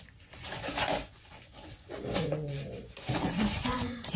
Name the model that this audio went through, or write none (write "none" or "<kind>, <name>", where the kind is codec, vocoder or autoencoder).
vocoder, Vocos